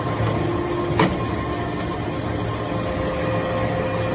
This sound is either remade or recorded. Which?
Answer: recorded